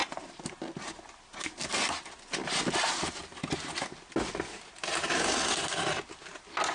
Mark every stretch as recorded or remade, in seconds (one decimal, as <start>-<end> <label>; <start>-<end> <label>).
0.0-0.9 remade; 0.9-6.7 recorded